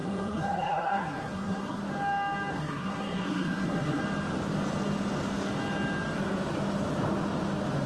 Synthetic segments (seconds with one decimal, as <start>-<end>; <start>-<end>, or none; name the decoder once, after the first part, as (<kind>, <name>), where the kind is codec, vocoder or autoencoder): 0.0-1.8 (codec, SNAC); 2.5-4.0

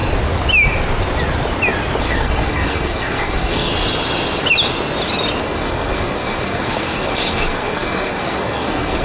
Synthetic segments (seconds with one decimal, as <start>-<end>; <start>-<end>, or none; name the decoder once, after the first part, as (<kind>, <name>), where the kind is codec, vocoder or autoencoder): 2.0-3.7 (codec, SNAC); 5.4-9.0

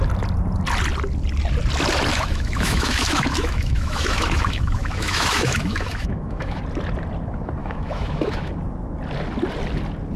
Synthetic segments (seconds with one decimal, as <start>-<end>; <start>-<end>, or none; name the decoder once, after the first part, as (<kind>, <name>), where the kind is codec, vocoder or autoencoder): 2.1-6.6 (autoencoder, DAC-VAE); 7.6-8.5

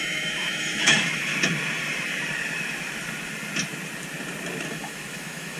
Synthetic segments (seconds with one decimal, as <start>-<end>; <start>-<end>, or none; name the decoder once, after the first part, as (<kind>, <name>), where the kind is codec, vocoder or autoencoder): 0.0-1.3 (autoencoder, DAC-VAE); 4.7-5.6

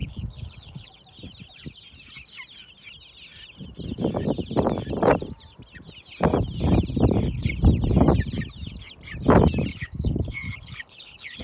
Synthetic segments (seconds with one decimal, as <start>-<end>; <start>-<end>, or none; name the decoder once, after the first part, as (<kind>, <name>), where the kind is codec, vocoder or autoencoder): 0.0-0.9 (codec, HILCodec); 9.7-11.4

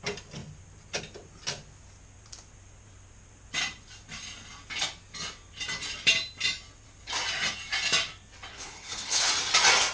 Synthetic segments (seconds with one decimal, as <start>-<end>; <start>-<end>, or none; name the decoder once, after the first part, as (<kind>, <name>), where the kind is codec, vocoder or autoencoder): 8.5-9.3 (codec, HILCodec)